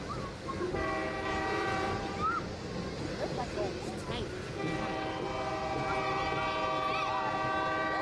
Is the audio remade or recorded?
recorded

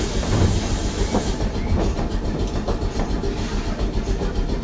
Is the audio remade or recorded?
remade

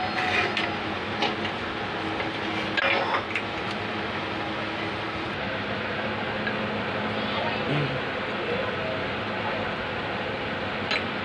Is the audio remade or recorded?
recorded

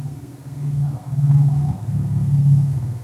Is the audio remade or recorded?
remade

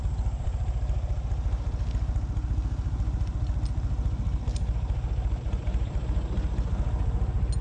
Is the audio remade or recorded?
recorded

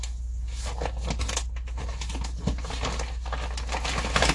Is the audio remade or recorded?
recorded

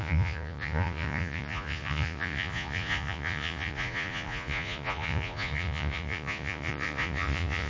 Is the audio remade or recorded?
remade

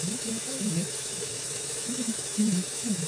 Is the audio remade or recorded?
remade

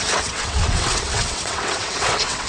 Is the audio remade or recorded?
remade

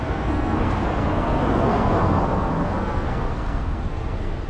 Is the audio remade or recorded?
remade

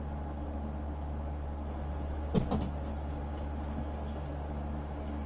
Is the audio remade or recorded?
recorded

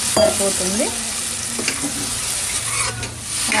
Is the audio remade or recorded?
recorded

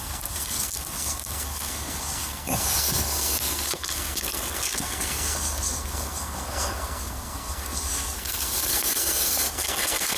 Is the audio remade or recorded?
remade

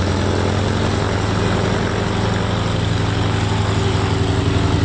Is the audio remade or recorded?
recorded